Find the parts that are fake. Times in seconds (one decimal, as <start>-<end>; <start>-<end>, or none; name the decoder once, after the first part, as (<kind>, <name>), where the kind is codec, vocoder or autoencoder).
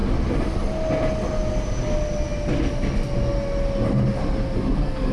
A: none